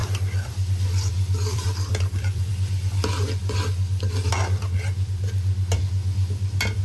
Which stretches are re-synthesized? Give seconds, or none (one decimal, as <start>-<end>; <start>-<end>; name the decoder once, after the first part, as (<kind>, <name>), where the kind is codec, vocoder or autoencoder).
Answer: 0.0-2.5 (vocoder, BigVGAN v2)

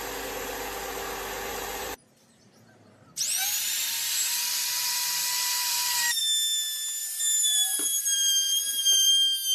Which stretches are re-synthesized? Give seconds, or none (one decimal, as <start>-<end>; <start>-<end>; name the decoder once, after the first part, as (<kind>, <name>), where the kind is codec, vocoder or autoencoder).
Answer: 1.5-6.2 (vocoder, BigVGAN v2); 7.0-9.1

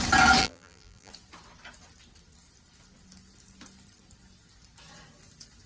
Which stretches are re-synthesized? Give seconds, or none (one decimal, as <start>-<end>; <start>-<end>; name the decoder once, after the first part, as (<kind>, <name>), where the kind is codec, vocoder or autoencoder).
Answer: 0.4-1.1 (vocoder, BigVGAN v2)

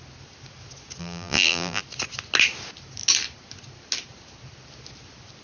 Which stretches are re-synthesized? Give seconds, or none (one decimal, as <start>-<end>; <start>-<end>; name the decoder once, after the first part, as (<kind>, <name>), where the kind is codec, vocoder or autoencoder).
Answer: 1.0-1.8 (vocoder, BigVGAN v2)

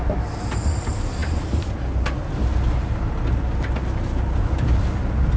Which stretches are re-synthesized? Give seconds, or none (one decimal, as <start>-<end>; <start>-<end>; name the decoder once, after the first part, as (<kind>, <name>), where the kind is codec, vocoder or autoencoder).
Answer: none